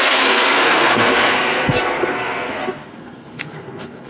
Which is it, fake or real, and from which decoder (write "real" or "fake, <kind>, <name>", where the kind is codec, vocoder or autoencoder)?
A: fake, codec, SNAC